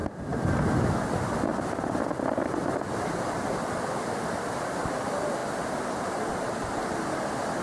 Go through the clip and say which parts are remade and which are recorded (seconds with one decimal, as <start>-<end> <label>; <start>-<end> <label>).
0.0-7.6 remade